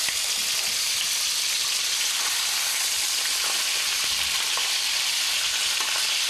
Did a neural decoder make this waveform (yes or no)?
no